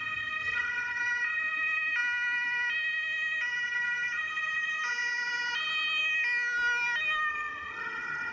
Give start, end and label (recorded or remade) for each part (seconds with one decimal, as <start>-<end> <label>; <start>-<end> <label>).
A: 0.0-0.4 recorded; 0.4-1.0 remade; 1.0-7.3 recorded; 7.3-8.3 remade